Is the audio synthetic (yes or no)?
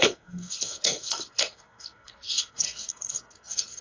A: yes